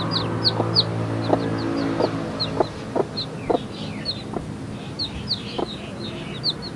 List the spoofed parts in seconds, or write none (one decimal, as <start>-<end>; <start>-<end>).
none